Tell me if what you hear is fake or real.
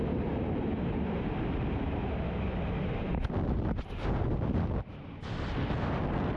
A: real